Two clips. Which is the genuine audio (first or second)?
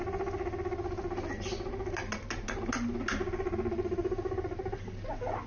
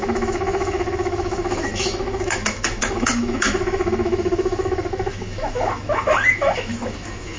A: first